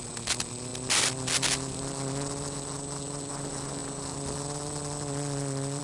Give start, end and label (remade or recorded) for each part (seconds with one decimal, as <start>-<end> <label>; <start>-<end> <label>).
0.0-5.8 recorded